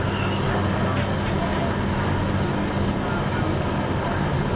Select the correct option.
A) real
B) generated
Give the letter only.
A